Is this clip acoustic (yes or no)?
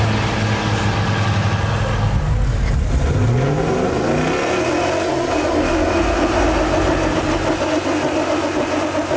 yes